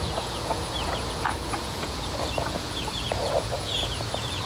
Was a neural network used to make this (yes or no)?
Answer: yes